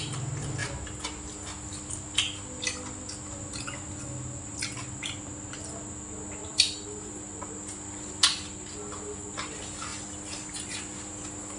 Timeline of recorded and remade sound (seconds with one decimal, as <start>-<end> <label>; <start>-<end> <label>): 0.0-6.4 recorded; 6.4-7.2 remade; 7.2-9.9 recorded; 9.9-11.1 remade; 11.1-11.6 recorded